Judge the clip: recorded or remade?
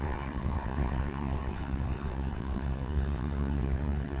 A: remade